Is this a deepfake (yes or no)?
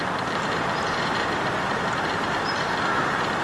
no